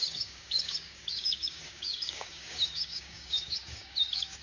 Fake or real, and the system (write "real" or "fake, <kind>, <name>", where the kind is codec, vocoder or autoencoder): fake, codec, DAC